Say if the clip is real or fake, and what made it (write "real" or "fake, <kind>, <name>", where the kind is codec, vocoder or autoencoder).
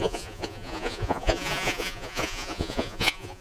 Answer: fake, vocoder, Vocos